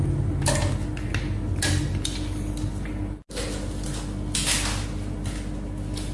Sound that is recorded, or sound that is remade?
recorded